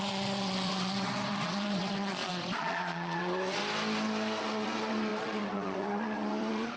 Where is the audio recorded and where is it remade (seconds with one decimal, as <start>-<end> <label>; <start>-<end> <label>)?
0.0-3.6 remade; 3.6-4.4 recorded; 4.4-6.8 remade